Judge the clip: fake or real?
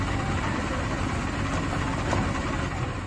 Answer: fake